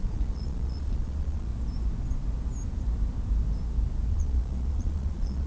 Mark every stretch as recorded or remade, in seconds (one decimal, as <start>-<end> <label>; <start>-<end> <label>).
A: 0.0-1.5 remade; 1.5-4.1 recorded; 4.1-5.5 remade